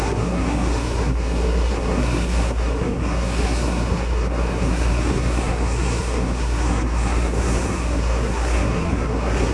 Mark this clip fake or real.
fake